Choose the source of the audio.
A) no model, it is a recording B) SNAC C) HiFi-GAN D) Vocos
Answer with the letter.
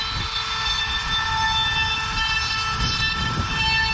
A